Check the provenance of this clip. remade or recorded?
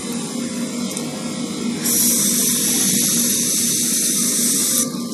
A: recorded